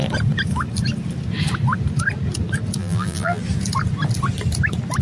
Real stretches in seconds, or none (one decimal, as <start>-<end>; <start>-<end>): 0.0-2.8; 3.4-5.0